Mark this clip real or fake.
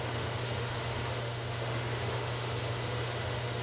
fake